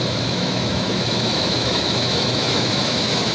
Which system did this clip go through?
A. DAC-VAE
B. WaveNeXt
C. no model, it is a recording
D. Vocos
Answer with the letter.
A